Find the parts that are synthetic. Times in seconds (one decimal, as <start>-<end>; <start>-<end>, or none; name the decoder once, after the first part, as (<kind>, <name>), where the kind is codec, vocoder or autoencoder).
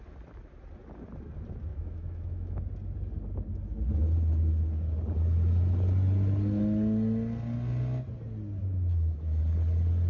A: 1.7-2.6 (autoencoder, DAC-VAE); 8.6-9.4